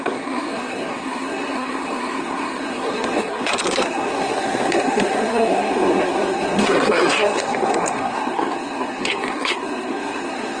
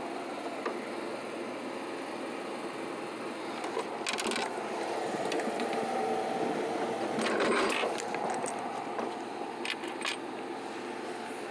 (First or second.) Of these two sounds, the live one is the second